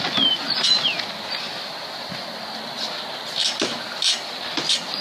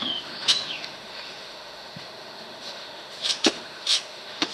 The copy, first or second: second